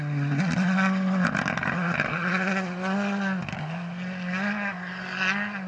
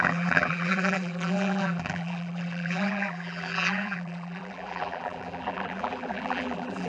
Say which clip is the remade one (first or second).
second